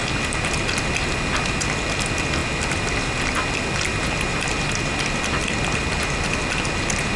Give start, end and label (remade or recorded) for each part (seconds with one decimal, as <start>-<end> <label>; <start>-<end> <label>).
0.0-7.2 recorded